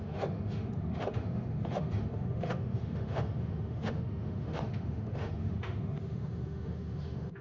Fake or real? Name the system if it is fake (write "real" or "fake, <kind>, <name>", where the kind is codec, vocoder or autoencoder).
fake, autoencoder, DAC-VAE